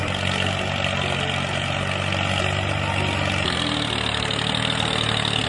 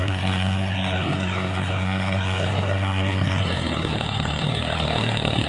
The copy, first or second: second